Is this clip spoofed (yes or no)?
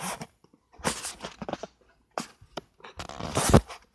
no